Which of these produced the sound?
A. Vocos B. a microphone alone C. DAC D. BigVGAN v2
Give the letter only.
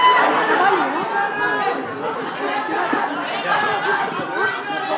B